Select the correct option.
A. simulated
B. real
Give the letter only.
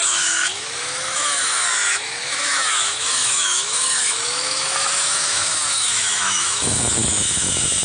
A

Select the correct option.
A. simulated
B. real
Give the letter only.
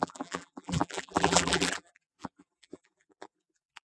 A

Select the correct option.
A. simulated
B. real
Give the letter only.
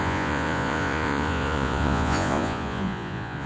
A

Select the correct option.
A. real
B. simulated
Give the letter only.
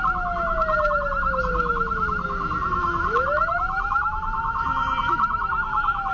A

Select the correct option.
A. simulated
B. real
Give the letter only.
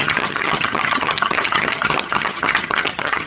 A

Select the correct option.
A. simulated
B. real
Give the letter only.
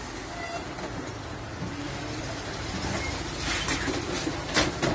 B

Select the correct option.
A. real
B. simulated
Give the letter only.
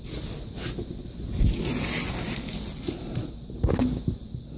A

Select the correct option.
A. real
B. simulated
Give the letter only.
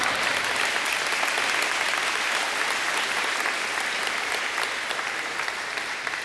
A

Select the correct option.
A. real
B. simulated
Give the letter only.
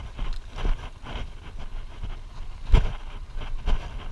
A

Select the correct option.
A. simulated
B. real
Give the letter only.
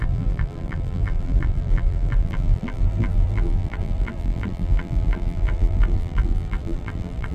A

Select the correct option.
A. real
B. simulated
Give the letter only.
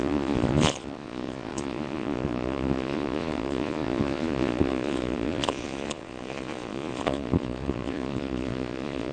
B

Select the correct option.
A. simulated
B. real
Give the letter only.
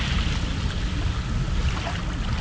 B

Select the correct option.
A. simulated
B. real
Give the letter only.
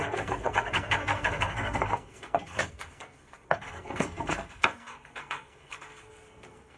A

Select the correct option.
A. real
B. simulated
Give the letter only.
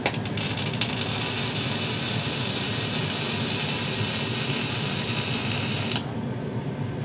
A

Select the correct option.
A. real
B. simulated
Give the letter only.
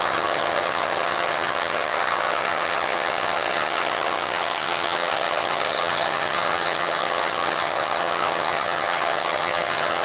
B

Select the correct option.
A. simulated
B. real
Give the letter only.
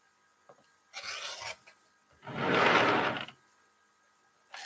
B